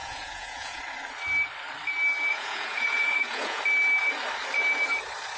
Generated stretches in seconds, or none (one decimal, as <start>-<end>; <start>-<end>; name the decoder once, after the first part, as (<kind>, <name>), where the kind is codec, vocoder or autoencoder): 0.0-0.8 (vocoder, Vocos); 2.3-3.6